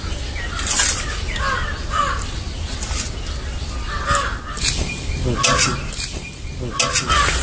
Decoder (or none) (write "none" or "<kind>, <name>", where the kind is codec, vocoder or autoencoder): none